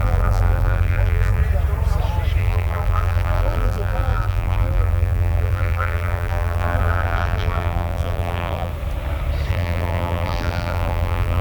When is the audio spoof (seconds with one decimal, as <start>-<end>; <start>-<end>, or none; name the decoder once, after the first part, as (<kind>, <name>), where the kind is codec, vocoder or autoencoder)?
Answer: 0.0-1.4 (vocoder, BigVGAN v2); 2.4-8.7; 9.5-11.4